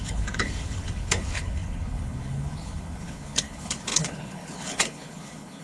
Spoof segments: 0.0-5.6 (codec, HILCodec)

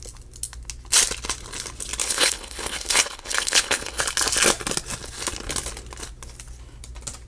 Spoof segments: 2.0-4.0 (codec, HILCodec)